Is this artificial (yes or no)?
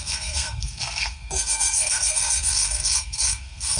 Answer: yes